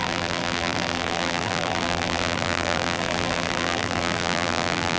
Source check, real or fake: fake